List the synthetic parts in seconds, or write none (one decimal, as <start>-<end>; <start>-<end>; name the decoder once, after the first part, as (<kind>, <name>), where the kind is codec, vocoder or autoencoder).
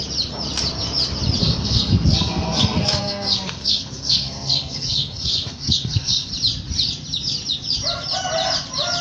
1.4-6.3 (codec, SNAC)